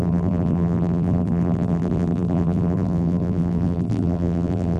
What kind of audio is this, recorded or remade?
remade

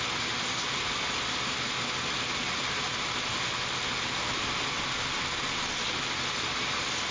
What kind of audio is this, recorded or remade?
recorded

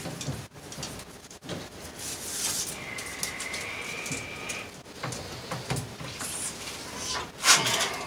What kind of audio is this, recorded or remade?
recorded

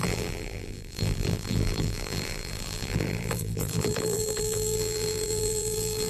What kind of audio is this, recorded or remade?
remade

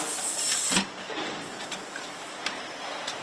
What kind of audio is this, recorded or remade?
remade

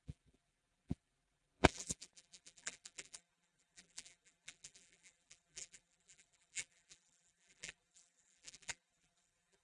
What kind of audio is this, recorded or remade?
remade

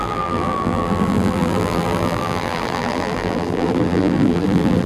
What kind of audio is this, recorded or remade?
remade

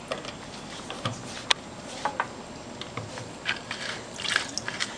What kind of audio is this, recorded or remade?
recorded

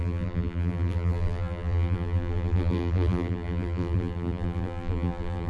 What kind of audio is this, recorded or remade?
remade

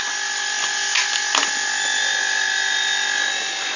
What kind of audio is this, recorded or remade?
recorded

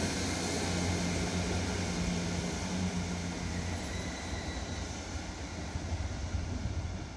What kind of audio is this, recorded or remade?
recorded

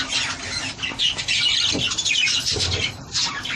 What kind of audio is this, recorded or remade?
recorded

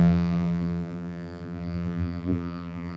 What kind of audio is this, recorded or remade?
remade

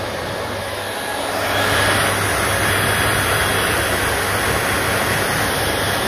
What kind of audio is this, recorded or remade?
remade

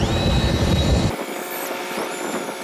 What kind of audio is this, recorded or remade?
recorded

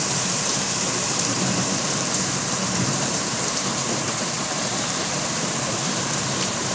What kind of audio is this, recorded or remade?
remade